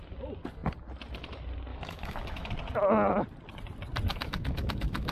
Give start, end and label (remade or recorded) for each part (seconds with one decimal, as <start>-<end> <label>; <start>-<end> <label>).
0.0-1.7 recorded; 1.7-2.5 remade; 2.5-4.1 recorded; 4.1-5.1 remade